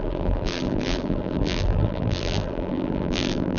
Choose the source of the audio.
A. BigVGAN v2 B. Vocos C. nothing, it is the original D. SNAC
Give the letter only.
A